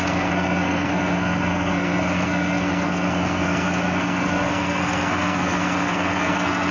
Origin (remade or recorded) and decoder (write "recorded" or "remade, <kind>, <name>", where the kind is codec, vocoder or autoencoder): remade, codec, SNAC